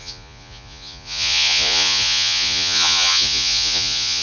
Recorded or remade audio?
remade